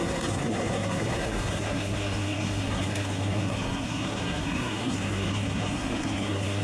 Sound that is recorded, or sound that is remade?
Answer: remade